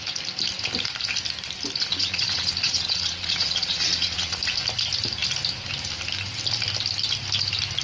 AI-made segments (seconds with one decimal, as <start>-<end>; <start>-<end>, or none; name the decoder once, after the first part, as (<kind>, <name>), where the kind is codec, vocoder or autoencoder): 1.8-4.4 (vocoder, Vocos)